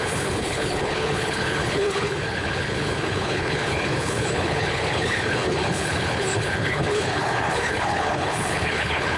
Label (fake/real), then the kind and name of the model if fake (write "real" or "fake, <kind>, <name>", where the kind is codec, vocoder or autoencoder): fake, codec, HILCodec